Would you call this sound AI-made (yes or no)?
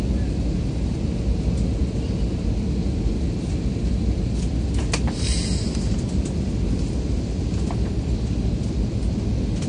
no